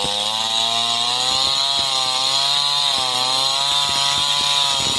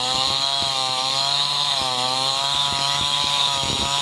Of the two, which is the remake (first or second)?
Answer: second